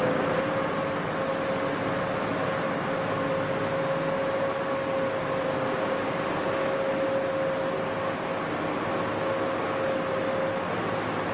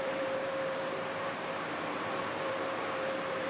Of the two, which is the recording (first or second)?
first